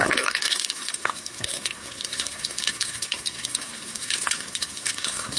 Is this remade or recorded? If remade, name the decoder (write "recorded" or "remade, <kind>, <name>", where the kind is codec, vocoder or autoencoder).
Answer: remade, codec, SNAC